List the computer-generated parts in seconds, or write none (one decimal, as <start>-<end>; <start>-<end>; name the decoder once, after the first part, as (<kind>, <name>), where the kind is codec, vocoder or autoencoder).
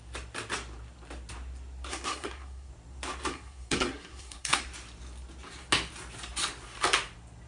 1.9-2.7 (codec, SNAC); 3.3-4.6